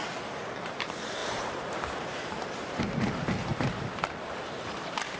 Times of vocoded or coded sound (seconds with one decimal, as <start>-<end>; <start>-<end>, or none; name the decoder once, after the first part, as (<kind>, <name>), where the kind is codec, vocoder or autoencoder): 0.0-3.5 (vocoder, BigVGAN v2); 4.3-5.2